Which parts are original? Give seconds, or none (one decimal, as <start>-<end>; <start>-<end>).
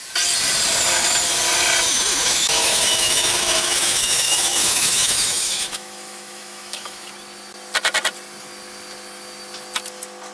0.0-1.9; 7.1-10.3